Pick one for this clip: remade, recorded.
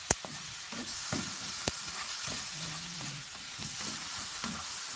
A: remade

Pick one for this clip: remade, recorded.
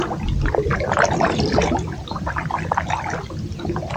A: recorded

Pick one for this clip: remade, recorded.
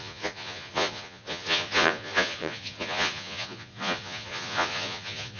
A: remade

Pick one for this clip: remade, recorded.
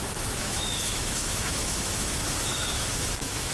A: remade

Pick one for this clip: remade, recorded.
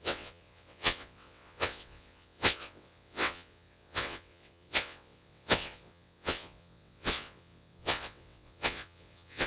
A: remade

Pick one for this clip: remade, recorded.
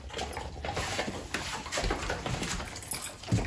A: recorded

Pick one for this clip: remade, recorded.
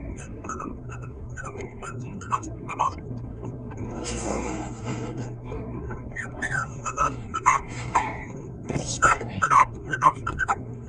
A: remade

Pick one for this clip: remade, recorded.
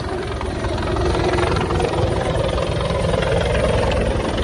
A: recorded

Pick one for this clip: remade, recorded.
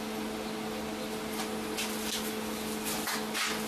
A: recorded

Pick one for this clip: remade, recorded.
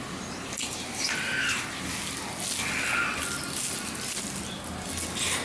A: recorded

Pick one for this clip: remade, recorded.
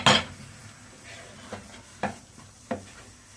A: recorded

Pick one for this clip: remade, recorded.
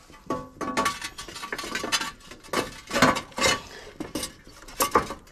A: recorded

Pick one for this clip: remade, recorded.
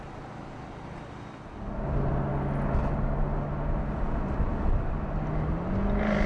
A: recorded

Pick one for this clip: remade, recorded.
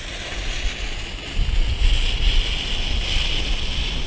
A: recorded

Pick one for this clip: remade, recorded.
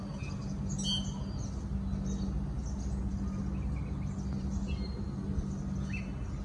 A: recorded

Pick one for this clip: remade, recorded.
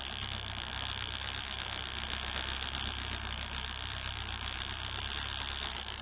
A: recorded